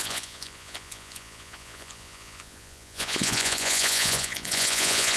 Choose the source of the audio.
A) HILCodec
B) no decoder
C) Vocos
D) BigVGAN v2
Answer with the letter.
C